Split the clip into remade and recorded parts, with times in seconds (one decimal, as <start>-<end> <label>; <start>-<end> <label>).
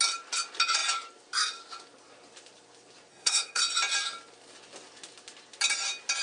0.0-3.1 recorded; 3.1-3.6 remade; 3.6-6.2 recorded